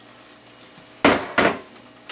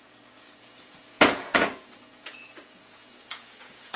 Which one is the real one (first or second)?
first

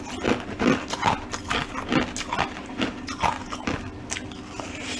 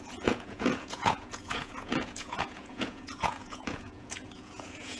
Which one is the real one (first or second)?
first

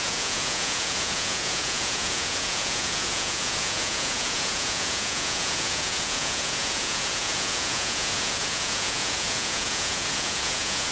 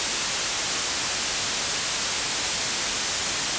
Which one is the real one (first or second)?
second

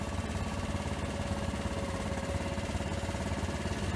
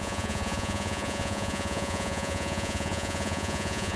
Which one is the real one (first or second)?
first